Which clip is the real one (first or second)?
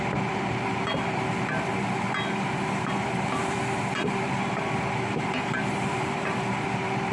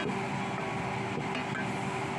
second